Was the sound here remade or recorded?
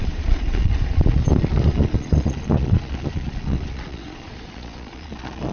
remade